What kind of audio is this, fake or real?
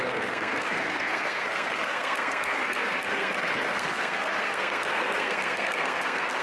fake